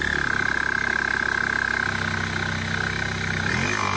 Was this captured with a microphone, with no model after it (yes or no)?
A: yes